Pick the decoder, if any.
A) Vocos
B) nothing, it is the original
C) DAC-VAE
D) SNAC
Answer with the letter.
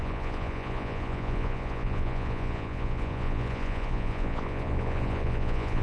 A